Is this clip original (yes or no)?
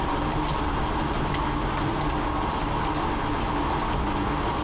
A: yes